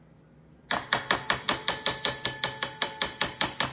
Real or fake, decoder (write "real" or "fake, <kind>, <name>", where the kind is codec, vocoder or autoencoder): real